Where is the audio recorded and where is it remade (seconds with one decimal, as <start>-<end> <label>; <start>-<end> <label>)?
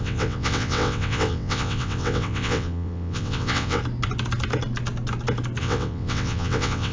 0.0-3.8 remade; 3.8-5.6 recorded; 5.6-6.9 remade